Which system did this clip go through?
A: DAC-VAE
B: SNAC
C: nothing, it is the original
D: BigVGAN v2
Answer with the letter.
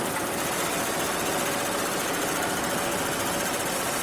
C